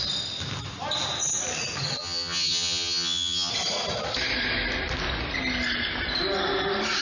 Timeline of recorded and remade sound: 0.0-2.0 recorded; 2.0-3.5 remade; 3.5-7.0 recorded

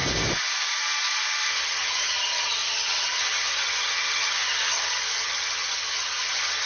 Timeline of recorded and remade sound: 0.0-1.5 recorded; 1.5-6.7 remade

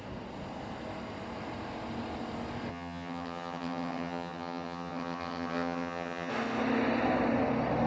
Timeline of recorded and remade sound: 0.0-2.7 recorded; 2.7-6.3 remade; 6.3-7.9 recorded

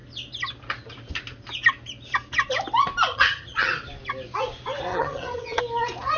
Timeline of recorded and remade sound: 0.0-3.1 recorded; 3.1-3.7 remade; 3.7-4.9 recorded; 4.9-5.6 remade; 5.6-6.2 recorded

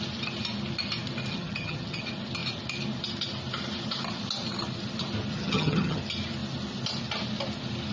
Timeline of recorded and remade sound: 0.0-1.3 recorded; 1.3-2.0 remade; 2.0-5.3 recorded; 5.3-6.0 remade; 6.0-7.9 recorded